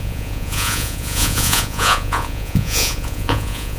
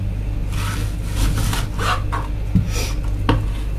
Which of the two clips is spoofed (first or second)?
first